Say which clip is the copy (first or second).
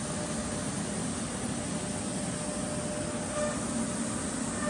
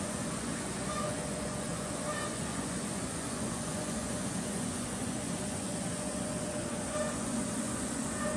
second